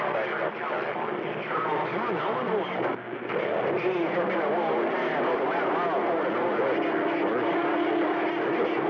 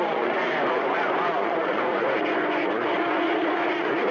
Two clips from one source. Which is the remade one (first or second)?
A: second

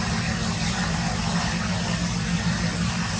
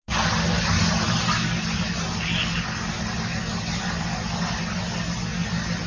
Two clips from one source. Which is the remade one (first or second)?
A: first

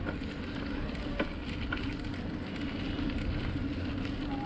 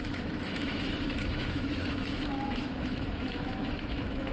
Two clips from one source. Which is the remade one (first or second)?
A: second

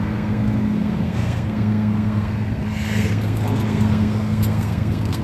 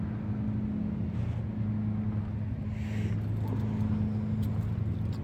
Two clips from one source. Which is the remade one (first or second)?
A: first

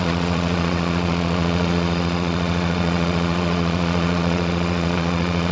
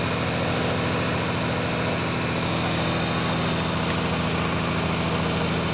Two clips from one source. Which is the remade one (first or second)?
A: first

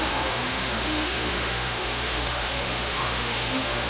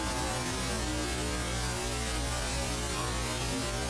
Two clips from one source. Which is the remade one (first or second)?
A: first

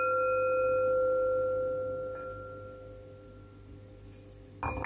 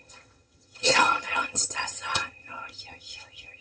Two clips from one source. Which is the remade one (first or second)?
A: second